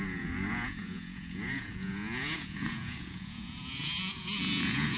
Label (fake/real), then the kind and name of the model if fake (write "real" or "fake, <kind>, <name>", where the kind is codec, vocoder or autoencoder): fake, vocoder, Vocos